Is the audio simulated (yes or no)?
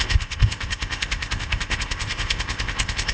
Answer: yes